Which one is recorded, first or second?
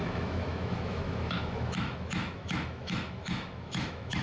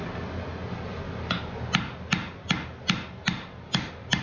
second